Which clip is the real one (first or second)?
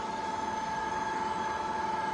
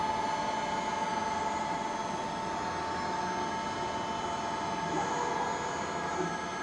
second